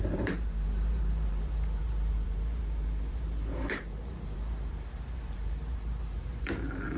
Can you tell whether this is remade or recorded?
remade